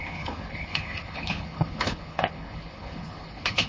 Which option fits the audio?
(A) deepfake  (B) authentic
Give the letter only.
A